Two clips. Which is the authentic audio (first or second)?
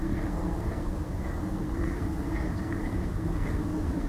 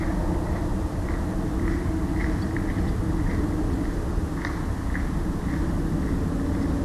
second